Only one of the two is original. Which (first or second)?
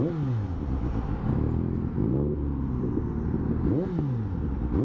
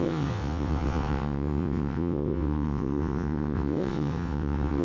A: first